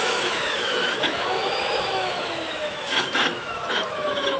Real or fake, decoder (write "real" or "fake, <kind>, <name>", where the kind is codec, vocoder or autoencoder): fake, autoencoder, DAC-VAE